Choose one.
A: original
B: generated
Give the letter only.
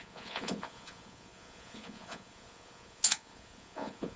B